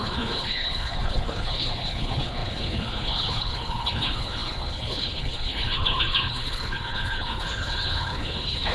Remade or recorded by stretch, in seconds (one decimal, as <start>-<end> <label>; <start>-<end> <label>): 0.0-8.7 remade